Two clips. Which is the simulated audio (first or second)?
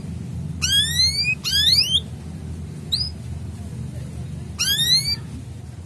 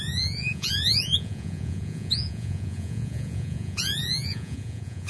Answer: second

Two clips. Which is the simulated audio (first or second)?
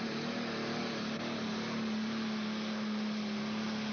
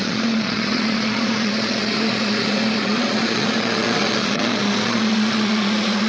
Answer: second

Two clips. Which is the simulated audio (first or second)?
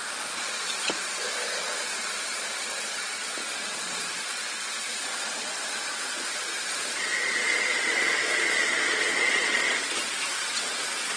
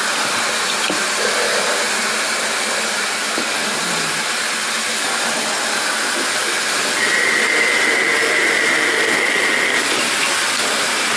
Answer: first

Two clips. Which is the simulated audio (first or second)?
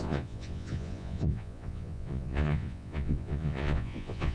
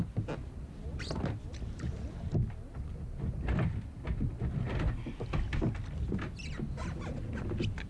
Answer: first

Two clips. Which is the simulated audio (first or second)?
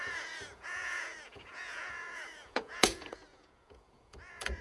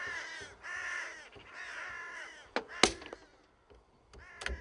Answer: first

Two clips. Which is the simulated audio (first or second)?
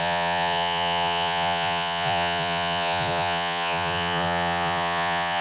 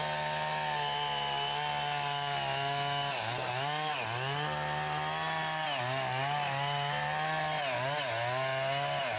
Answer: first